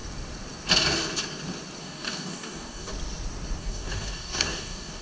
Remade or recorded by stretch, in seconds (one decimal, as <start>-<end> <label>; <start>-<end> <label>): 0.0-1.8 recorded; 1.8-2.9 remade; 2.9-3.6 recorded; 3.6-5.0 remade